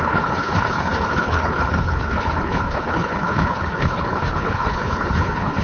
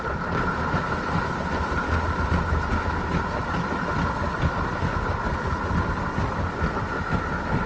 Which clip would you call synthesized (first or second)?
first